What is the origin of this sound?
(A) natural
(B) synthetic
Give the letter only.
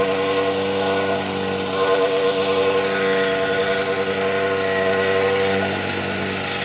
A